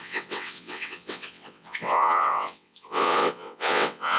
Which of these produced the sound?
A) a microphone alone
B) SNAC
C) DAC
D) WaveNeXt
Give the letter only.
D